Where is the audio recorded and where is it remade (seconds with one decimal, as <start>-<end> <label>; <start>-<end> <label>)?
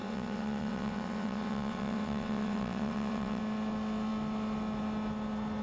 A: 0.0-3.4 remade; 3.4-5.6 recorded